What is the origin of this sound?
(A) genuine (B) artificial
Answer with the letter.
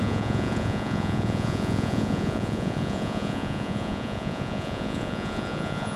B